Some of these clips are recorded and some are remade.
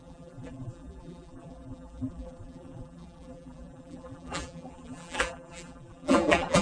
remade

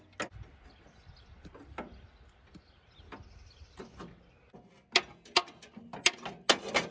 recorded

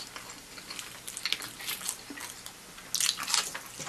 recorded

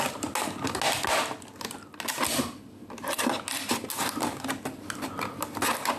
recorded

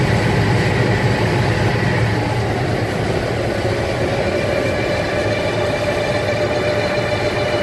recorded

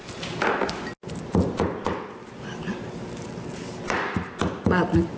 recorded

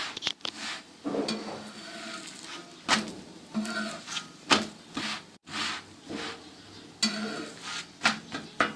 recorded